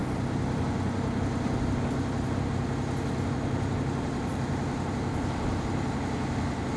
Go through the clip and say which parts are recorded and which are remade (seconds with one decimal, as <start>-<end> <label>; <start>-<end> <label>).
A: 0.0-4.3 recorded; 4.3-5.3 remade; 5.3-6.8 recorded